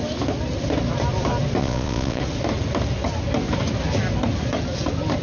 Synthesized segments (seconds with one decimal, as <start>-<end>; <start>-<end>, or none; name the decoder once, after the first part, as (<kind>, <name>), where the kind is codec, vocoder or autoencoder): 1.6-2.2 (vocoder, Vocos)